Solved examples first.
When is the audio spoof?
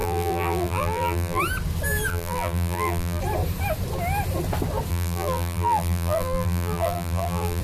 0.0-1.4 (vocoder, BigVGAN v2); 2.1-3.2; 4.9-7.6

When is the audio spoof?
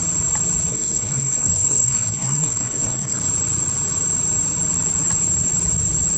0.7-3.2 (codec, SNAC)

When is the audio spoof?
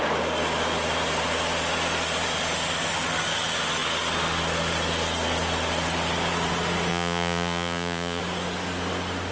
6.9-8.2 (vocoder, Vocos)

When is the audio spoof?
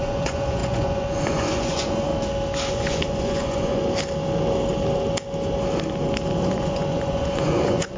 0.0-2.1 (vocoder, Vocos); 2.7-3.8; 6.5-8.0